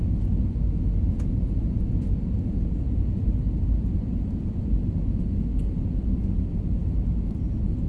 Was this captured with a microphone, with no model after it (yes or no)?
yes